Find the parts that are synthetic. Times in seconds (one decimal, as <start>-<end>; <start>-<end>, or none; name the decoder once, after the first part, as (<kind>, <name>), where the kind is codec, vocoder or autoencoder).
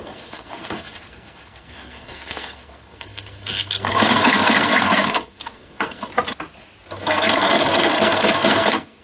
0.0-6.0 (codec, SNAC); 7.0-9.0